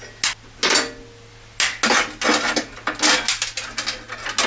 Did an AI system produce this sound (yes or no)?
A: no